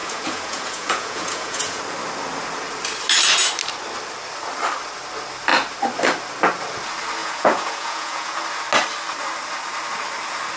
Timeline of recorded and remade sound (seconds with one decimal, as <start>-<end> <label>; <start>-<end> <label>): 0.0-1.8 remade; 1.8-7.2 recorded; 7.2-8.4 remade; 8.4-10.6 recorded

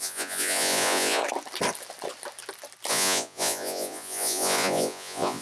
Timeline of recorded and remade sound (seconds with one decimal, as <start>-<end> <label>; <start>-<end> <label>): 0.0-1.2 remade; 1.2-2.9 recorded; 2.9-5.4 remade

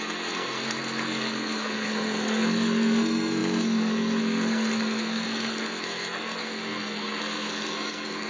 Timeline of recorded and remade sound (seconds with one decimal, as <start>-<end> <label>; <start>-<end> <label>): 0.0-8.3 remade

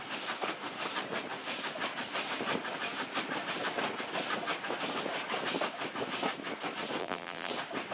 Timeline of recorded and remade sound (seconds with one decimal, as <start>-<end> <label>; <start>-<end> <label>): 0.0-7.0 recorded; 7.0-7.5 remade; 7.5-7.9 recorded